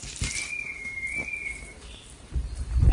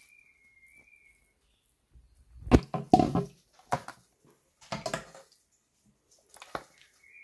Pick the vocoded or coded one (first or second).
first